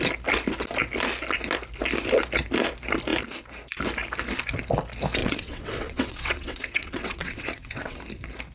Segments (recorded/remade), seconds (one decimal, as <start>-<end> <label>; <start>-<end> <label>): 0.0-5.2 recorded; 5.2-8.0 remade; 8.0-8.5 recorded